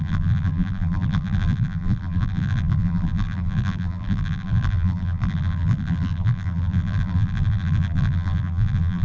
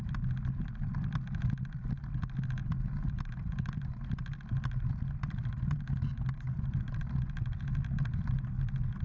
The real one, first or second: second